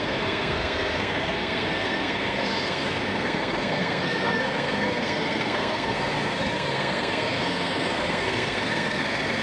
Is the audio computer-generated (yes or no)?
yes